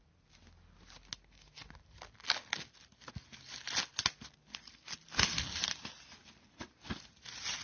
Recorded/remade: recorded